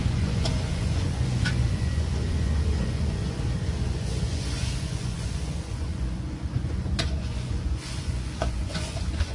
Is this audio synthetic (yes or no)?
yes